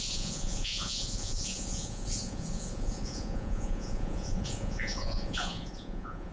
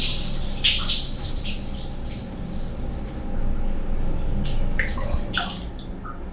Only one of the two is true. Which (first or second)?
second